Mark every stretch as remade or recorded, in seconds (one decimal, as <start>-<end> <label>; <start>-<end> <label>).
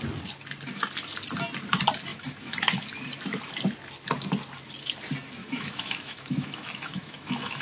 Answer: 0.0-2.1 recorded; 2.1-2.8 remade; 2.8-5.4 recorded; 5.4-7.6 remade